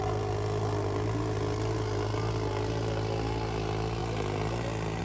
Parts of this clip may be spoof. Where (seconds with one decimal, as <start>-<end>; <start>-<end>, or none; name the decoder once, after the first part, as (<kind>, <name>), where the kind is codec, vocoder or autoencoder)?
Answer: none